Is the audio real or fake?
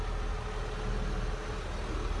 real